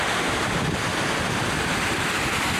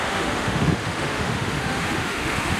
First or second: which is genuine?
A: first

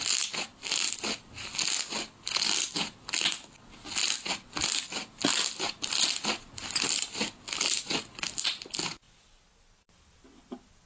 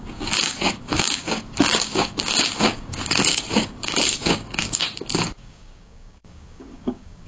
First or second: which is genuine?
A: first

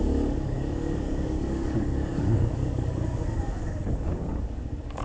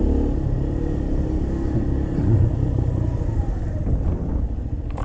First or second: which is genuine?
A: second